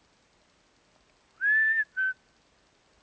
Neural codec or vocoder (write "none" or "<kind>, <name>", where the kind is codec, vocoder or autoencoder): none